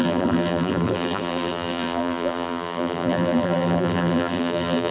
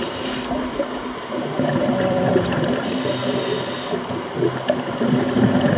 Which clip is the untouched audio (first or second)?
second